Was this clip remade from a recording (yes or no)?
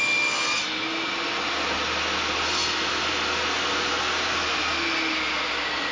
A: no